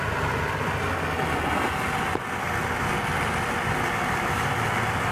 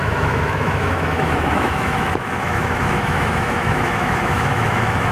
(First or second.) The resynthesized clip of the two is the second